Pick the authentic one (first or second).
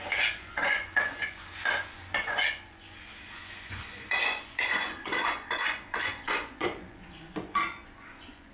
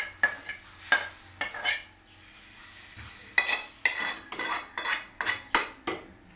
second